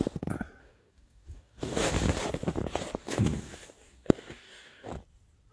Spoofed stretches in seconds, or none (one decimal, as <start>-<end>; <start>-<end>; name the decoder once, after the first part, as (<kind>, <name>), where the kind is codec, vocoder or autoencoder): 0.6-1.9 (codec, DAC); 3.0-4.9